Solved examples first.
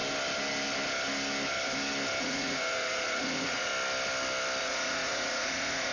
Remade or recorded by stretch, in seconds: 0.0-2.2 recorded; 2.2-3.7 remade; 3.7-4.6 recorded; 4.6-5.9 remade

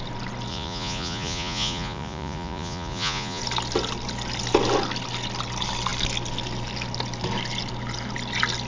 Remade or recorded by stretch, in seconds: 0.0-0.5 recorded; 0.5-3.4 remade; 3.4-8.7 recorded

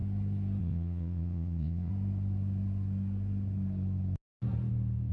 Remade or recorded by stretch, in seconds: 0.0-0.6 recorded; 0.6-1.9 remade; 1.9-5.1 recorded

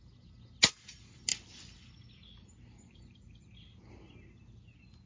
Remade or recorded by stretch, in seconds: 0.0-5.1 recorded

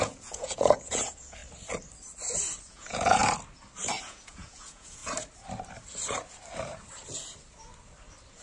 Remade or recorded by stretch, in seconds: 0.0-1.4 remade; 1.4-2.7 recorded; 2.7-3.2 remade; 3.2-4.0 recorded; 4.0-5.0 remade; 5.0-8.4 recorded